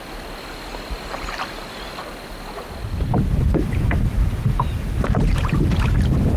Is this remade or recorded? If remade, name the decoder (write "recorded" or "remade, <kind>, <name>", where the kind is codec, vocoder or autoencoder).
recorded